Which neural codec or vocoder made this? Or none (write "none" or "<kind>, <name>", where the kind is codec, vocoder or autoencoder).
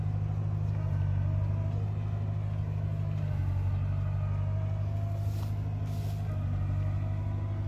none